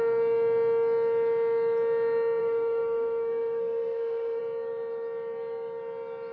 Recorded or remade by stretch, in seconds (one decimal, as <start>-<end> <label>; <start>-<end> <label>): 0.0-2.4 recorded; 2.4-4.4 remade; 4.4-6.3 recorded